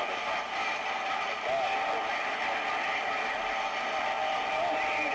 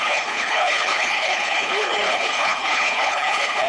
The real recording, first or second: first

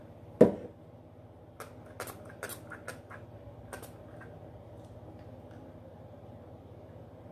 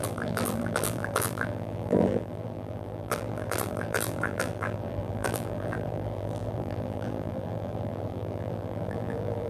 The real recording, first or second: first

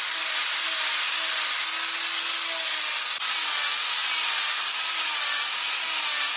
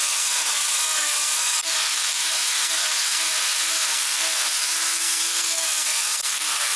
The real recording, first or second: first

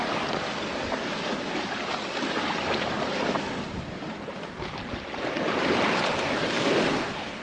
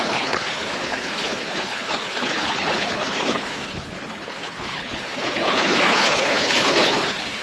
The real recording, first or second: first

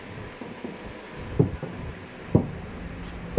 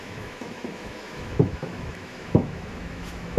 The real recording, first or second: first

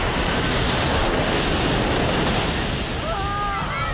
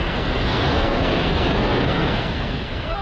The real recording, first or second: first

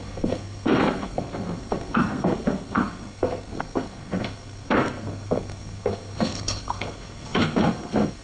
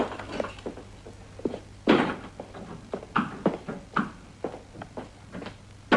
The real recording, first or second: second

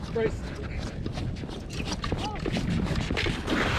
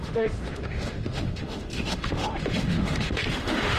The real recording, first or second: first